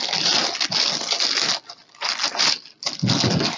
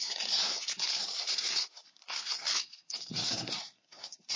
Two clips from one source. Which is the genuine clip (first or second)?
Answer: first